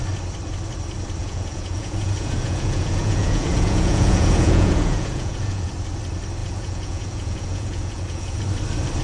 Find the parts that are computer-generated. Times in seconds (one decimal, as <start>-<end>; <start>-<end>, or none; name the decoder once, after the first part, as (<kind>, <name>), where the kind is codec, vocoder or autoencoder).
1.2-5.7 (vocoder, Vocos); 6.4-8.4